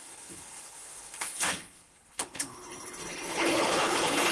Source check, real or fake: fake